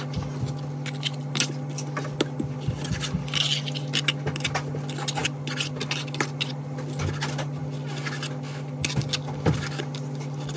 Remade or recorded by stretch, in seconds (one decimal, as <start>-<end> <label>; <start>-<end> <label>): 0.0-10.6 recorded

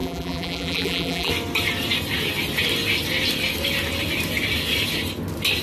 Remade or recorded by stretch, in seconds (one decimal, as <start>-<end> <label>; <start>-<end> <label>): 0.0-1.3 remade; 1.3-5.6 recorded

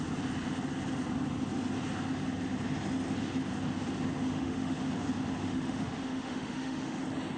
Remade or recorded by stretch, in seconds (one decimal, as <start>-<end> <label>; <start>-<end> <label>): 0.0-4.3 recorded; 4.3-4.8 remade; 4.8-5.4 recorded; 5.4-7.0 remade; 7.0-7.4 recorded

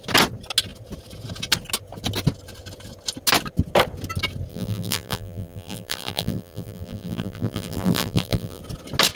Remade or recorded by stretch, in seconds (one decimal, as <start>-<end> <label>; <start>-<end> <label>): 0.0-4.5 recorded; 4.5-8.6 remade; 8.6-9.2 recorded

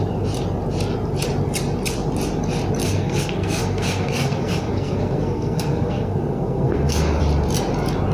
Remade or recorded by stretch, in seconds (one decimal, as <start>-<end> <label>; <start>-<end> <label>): 0.0-2.8 recorded; 2.8-7.2 remade; 7.2-8.1 recorded